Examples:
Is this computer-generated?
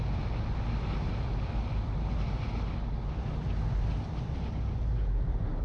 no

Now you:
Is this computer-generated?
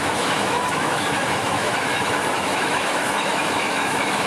yes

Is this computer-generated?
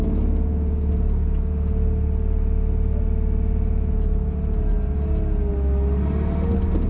no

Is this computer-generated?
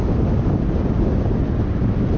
no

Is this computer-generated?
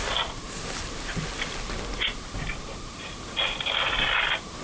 no